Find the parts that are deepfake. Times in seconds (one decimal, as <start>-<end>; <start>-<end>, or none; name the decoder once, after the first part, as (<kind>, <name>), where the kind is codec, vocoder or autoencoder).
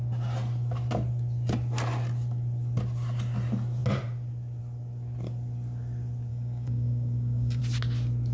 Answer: 6.3-7.6 (codec, DAC)